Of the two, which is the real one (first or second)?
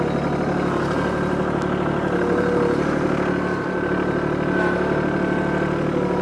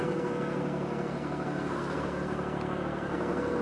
first